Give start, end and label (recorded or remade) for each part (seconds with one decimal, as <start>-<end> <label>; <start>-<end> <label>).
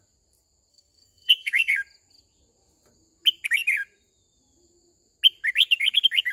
0.0-0.7 recorded; 0.7-1.7 remade; 1.7-6.3 recorded